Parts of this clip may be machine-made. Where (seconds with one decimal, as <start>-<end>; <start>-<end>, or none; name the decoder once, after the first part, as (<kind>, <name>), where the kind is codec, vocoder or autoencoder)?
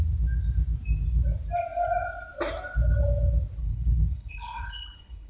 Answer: 3.6-5.3 (codec, HILCodec)